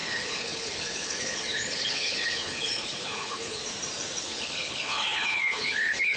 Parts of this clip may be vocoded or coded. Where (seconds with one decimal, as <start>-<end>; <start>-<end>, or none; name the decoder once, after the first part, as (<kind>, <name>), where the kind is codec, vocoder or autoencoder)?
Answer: 0.0-3.6 (codec, HILCodec); 4.2-6.2